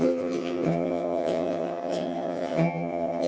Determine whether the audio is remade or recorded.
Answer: remade